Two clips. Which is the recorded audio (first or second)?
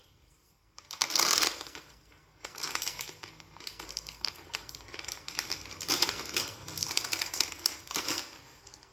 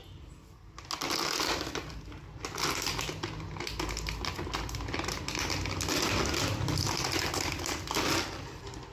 second